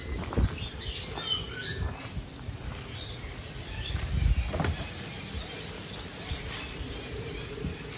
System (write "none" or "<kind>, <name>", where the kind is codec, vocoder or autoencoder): none